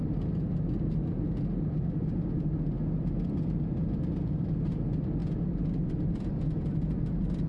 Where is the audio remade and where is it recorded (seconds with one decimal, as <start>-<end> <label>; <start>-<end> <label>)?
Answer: 0.0-5.2 recorded; 5.2-7.5 remade